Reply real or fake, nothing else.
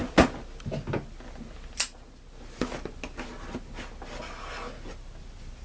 real